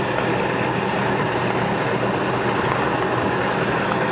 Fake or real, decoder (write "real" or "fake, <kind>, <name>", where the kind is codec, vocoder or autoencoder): real